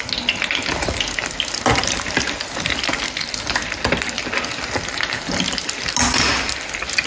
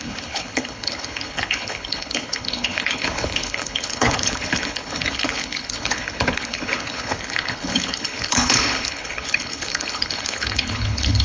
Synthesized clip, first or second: second